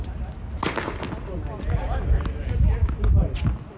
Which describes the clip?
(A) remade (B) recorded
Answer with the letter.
B